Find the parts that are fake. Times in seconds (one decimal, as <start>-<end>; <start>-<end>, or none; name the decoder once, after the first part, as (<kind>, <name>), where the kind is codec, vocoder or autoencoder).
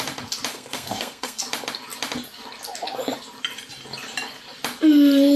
0.5-1.4 (codec, SNAC)